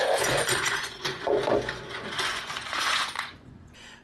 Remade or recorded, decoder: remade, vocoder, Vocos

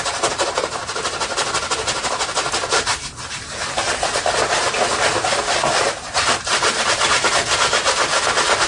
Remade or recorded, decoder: recorded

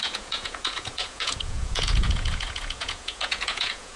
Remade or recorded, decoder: remade, vocoder, Vocos